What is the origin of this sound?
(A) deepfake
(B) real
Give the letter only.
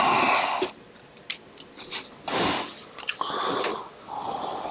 B